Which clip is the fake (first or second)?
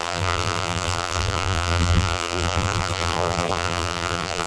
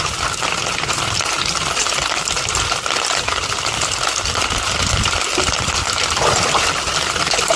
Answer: first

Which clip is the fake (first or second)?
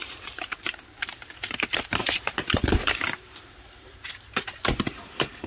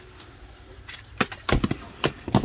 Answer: first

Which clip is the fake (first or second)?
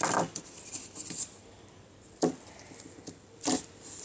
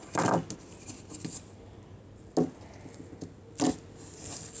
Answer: first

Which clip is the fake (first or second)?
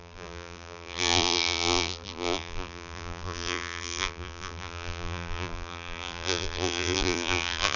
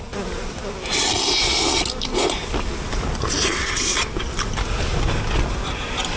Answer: first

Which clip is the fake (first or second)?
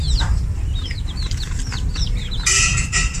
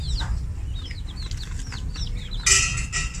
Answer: first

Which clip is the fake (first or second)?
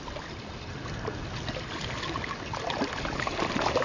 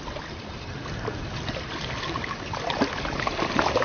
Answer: second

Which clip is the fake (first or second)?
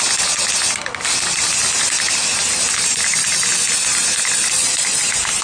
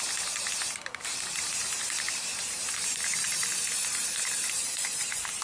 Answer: second